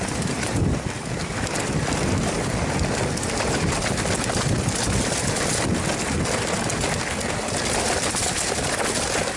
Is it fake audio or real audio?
real